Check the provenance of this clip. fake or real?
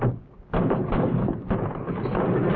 real